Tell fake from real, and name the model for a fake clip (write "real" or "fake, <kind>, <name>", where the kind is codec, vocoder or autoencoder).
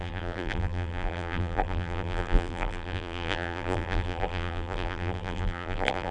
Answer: fake, vocoder, BigVGAN v2